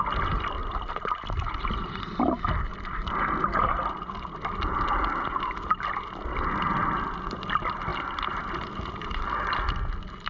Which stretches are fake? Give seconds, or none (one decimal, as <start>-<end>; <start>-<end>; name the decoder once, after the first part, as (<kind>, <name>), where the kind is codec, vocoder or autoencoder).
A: 0.6-2.1 (vocoder, BigVGAN v2)